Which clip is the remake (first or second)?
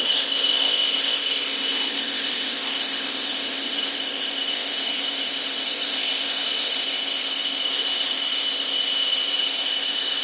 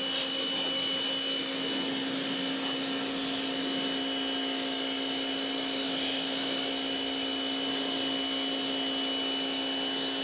first